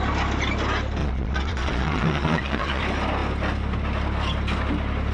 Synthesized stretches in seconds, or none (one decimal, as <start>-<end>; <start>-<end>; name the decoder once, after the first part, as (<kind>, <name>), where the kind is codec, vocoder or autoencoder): 1.0-2.8 (vocoder, Vocos)